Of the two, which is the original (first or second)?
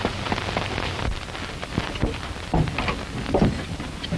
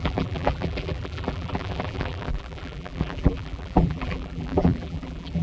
first